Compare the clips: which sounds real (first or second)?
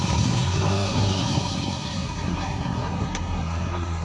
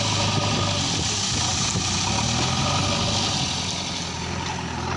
second